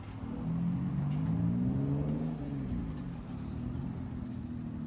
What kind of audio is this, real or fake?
real